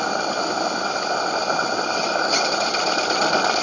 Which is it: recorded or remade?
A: recorded